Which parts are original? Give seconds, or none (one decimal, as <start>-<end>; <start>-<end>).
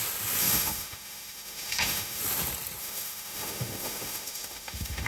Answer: 0.0-0.4; 2.2-2.8